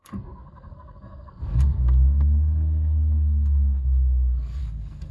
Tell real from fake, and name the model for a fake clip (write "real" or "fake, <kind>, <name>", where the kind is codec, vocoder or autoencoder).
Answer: fake, codec, SNAC